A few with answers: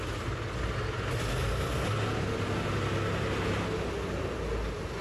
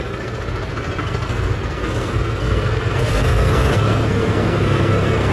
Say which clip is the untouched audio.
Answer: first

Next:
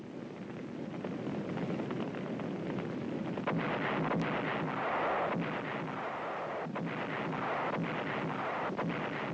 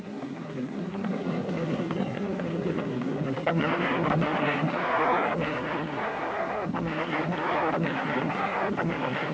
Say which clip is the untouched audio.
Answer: first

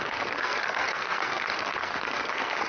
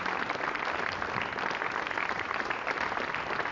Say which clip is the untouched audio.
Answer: second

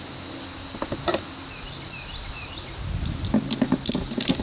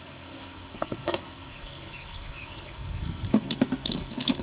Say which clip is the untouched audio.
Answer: first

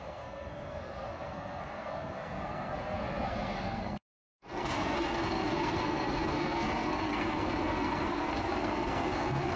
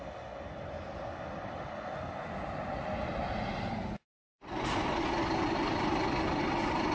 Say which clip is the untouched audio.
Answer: second